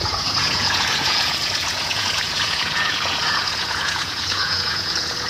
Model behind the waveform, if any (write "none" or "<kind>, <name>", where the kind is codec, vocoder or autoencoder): vocoder, Vocos